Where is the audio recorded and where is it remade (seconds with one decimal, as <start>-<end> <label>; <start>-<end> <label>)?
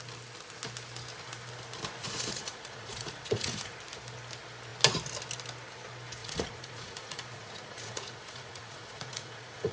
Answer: 0.0-2.0 recorded; 2.0-3.8 remade; 3.8-6.2 recorded; 6.2-9.7 remade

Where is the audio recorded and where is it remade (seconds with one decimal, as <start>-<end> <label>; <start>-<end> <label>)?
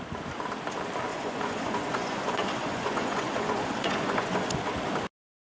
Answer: 0.0-1.1 recorded; 1.1-4.5 remade; 4.5-5.6 recorded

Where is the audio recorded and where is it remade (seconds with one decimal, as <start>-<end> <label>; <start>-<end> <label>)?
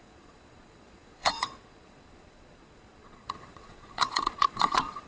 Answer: 0.0-5.1 remade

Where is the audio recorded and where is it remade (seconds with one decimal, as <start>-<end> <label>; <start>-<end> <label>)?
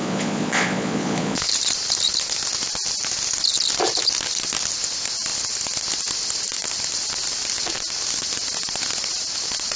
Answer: 0.0-1.5 remade; 1.5-9.8 recorded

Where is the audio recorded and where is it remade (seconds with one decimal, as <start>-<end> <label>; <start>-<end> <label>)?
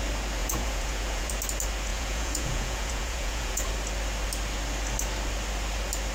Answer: 0.0-0.4 recorded; 0.4-1.3 remade; 1.3-1.9 recorded; 1.9-3.7 remade; 3.7-6.1 recorded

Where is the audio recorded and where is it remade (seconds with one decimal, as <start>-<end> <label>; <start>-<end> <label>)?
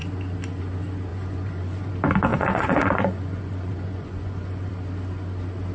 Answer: 0.0-1.1 recorded; 1.1-1.9 remade; 1.9-2.3 recorded; 2.3-4.7 remade; 4.7-5.7 recorded